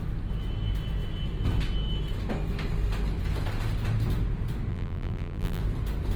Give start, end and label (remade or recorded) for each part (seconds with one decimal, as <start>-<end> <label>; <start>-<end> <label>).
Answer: 0.0-4.7 recorded; 4.7-5.6 remade; 5.6-6.2 recorded